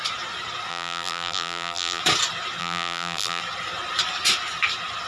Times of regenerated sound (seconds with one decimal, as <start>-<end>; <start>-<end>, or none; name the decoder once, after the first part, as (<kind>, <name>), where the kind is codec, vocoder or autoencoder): 0.7-2.0 (vocoder, BigVGAN v2); 2.6-3.4